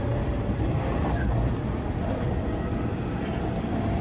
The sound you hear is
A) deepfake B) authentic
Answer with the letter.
B